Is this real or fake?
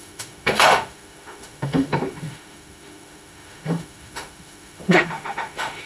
fake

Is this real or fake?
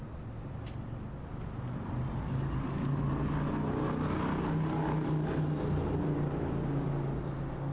real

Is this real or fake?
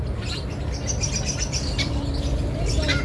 real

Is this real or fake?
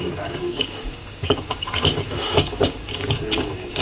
fake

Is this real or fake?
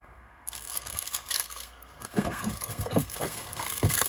fake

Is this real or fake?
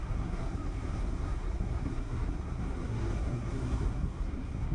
fake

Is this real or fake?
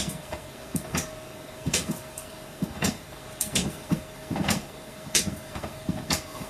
fake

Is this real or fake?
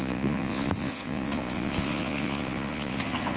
fake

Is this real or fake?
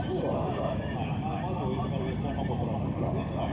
real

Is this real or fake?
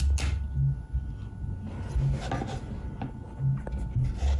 real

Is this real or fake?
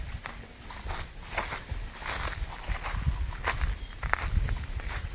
real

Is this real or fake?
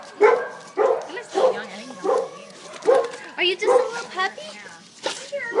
real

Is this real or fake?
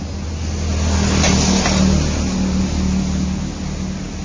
real